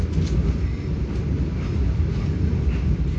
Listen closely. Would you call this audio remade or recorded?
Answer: recorded